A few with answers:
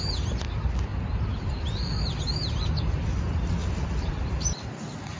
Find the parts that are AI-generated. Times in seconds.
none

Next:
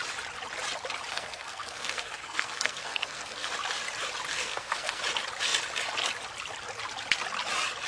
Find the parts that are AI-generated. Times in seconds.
1.1-3.5 (codec, SNAC); 4.3-5.0

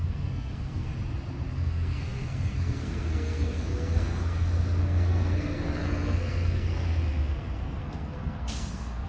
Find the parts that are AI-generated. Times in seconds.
0.0-0.9 (codec, SNAC); 1.5-9.1

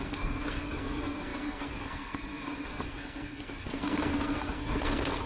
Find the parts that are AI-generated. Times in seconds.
0.0-5.3 (codec, SNAC)

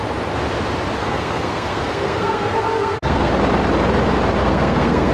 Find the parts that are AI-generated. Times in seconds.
1.0-3.3 (codec, SNAC); 4.4-5.1

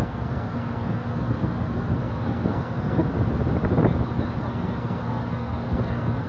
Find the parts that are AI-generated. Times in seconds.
0.0-3.1 (codec, SNAC); 4.4-6.3

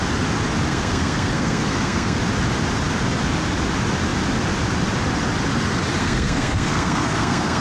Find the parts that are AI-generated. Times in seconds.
0.7-2.2 (codec, SNAC); 6.0-7.6